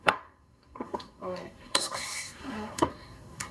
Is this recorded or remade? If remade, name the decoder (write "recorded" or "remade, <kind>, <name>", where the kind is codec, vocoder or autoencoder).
remade, codec, SNAC